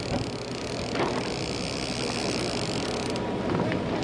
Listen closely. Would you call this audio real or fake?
real